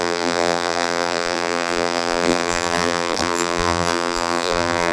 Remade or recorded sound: remade